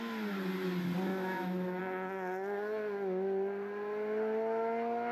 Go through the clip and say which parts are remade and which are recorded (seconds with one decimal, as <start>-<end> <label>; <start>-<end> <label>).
0.0-1.1 recorded; 1.1-1.8 remade; 1.8-5.1 recorded